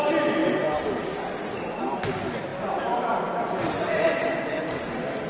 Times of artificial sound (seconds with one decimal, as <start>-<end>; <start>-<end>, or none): none